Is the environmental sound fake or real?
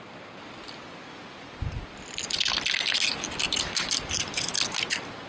real